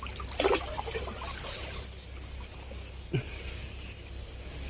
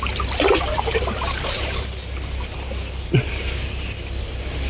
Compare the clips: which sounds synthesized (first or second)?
second